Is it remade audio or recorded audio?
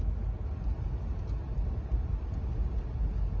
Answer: recorded